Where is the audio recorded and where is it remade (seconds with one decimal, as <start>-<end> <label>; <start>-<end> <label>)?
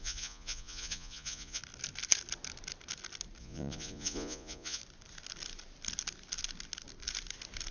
0.0-1.6 remade; 1.6-3.4 recorded; 3.4-4.8 remade; 4.8-7.7 recorded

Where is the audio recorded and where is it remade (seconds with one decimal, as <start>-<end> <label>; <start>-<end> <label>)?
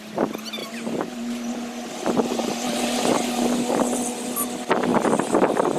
0.0-5.8 recorded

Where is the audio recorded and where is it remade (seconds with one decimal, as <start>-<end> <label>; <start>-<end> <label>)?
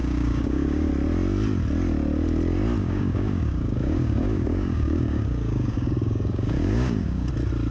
0.0-0.9 remade; 0.9-2.8 recorded; 2.8-7.3 remade; 7.3-7.7 recorded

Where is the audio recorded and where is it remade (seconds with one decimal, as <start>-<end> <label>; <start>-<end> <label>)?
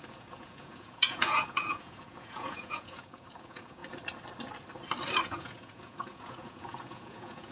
0.0-3.8 remade; 3.8-5.2 recorded; 5.2-7.5 remade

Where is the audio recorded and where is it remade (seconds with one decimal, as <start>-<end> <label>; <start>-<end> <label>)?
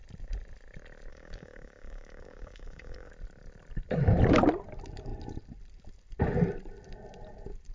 0.0-1.1 recorded; 1.1-3.1 remade; 3.1-7.7 recorded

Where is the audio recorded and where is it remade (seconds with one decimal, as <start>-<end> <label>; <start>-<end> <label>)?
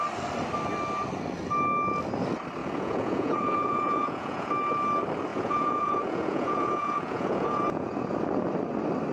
0.0-2.6 recorded; 2.6-4.5 remade; 4.5-5.3 recorded; 5.3-8.0 remade; 8.0-9.1 recorded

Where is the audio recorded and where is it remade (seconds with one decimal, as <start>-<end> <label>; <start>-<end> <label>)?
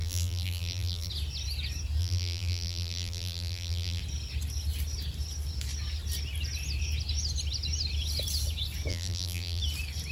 0.0-1.1 remade; 1.1-2.0 recorded; 2.0-4.0 remade; 4.0-8.9 recorded; 8.9-9.6 remade; 9.6-10.1 recorded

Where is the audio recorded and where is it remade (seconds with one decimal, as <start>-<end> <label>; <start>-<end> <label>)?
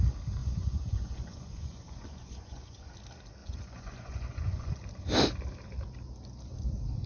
0.0-0.4 recorded; 0.4-2.9 remade; 2.9-3.4 recorded; 3.4-4.7 remade; 4.7-7.1 recorded